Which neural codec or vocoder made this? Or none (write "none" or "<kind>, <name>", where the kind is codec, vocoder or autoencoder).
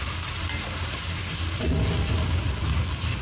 none